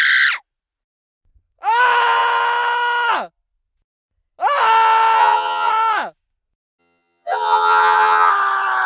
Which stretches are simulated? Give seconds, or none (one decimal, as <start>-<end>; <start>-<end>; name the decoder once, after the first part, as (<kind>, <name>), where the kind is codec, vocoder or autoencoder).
5.2-5.7 (vocoder, HiFi-GAN); 6.8-8.3